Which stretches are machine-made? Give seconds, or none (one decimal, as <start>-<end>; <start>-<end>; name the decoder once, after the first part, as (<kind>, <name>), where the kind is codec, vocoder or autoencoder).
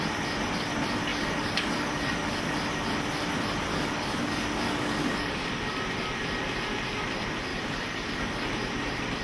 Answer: 1.1-2.4 (codec, DAC); 3.7-5.5; 7.5-8.5